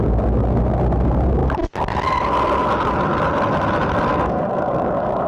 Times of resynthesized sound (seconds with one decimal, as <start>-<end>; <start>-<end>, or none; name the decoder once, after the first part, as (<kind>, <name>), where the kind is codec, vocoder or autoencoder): 4.1-5.3 (codec, DAC)